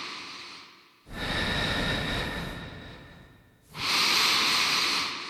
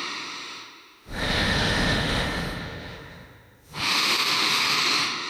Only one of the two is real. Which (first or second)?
first